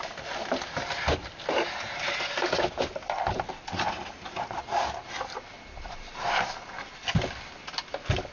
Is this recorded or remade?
recorded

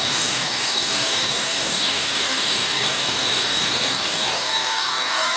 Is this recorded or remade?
remade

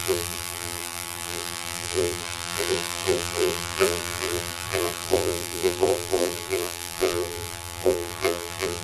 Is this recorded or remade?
remade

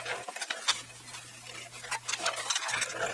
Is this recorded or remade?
recorded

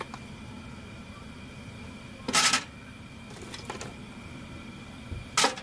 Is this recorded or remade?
recorded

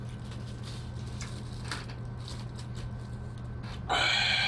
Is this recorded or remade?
recorded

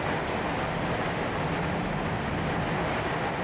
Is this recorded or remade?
recorded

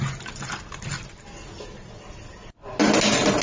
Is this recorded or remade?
recorded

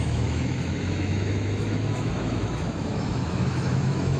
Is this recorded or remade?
remade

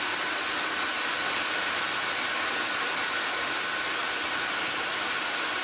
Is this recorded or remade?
recorded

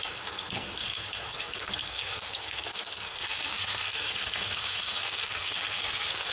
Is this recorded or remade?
remade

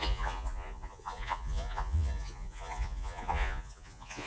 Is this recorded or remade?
remade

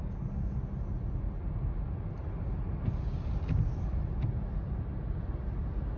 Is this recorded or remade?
recorded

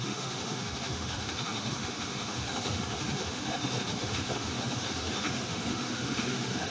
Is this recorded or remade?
remade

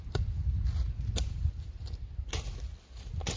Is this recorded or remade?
recorded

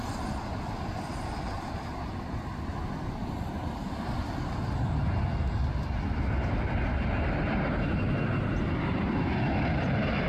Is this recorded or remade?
recorded